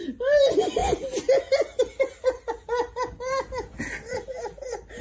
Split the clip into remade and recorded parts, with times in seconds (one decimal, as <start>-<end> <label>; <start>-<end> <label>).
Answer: 0.0-5.0 recorded